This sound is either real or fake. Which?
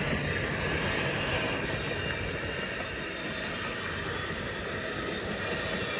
real